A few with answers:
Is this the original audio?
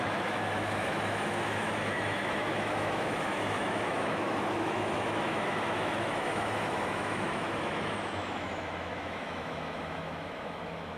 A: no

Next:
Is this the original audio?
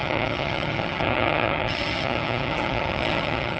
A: no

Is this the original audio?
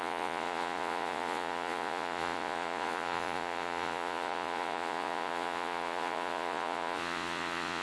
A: no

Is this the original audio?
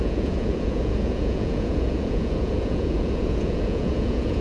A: no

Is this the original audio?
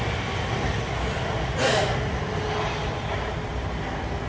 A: yes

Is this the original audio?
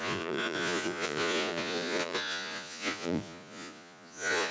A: no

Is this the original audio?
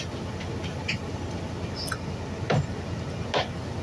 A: yes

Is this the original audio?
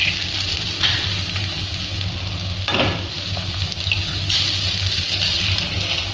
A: yes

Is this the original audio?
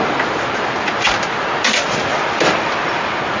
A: yes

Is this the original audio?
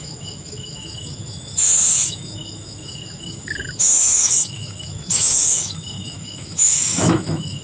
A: no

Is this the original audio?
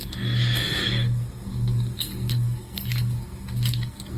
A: no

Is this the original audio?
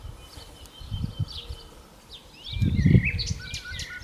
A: yes